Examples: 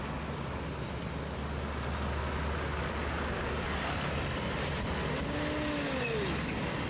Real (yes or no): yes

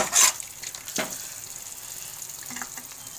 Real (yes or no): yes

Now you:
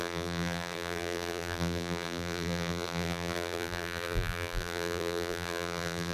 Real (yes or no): no